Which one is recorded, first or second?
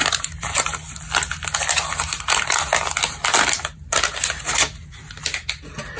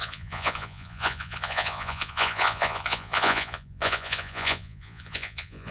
first